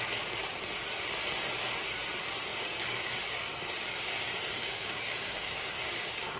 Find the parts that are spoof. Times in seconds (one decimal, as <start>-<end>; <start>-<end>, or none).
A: 2.5-6.4

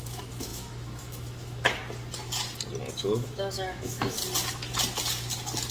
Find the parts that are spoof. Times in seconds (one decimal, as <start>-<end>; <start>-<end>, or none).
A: 0.0-1.8; 3.0-4.2